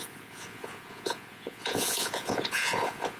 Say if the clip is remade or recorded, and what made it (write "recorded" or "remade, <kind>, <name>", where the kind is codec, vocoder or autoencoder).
remade, vocoder, Vocos